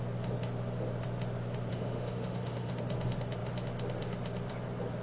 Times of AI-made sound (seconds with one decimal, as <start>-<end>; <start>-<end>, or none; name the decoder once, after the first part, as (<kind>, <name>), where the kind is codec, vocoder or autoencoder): 1.7-2.7 (autoencoder, DAC-VAE)